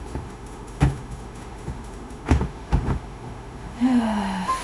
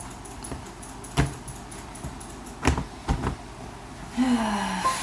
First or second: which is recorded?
second